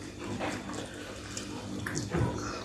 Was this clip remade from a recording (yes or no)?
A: no